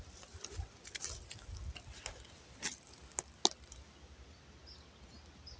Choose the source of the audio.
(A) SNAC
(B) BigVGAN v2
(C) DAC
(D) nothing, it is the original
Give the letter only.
D